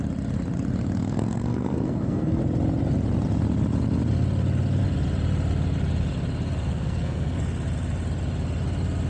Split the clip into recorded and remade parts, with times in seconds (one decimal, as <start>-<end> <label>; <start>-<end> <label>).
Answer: 0.0-1.0 recorded; 1.0-2.4 remade; 2.4-6.7 recorded; 6.7-7.4 remade; 7.4-9.1 recorded